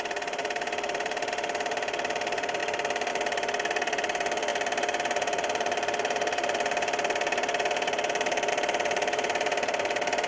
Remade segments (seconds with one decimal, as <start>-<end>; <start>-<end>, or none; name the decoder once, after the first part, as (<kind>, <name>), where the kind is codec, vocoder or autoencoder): 0.0-2.6 (vocoder, BigVGAN v2); 3.1-10.3